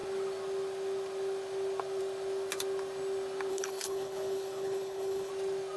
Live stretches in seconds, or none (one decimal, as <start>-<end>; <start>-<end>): 0.0-3.5; 5.3-5.8